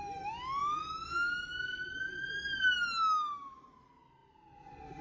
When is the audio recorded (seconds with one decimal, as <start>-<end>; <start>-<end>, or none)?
0.0-5.0